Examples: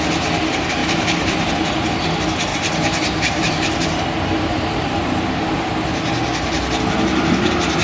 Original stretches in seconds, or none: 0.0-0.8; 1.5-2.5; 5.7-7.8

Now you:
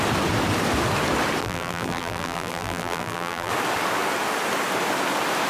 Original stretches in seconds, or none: 0.0-1.4; 3.5-5.5

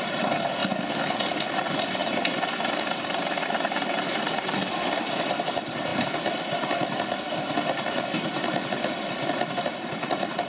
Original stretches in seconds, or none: 0.6-1.6; 4.6-5.2; 5.9-9.6

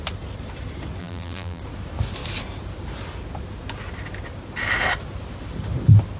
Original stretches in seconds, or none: 0.0-1.0; 1.6-6.2

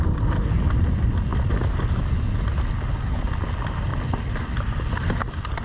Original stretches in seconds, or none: 0.0-3.9; 4.9-5.6

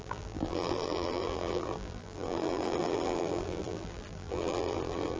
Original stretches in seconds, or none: none

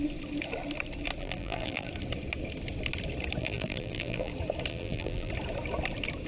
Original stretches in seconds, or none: 0.0-1.2; 1.9-3.4; 4.3-4.7; 5.3-6.3

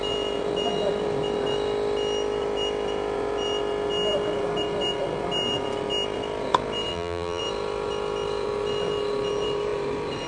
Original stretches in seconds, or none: 0.0-6.9; 7.4-10.3